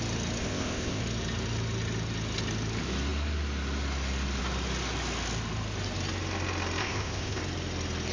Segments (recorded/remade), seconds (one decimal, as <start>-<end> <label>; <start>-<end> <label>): 0.0-0.4 recorded; 0.4-1.0 remade; 1.0-6.8 recorded; 6.8-7.4 remade; 7.4-8.1 recorded